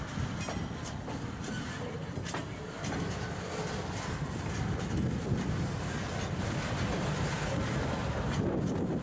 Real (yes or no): yes